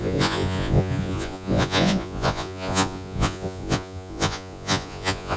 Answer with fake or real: fake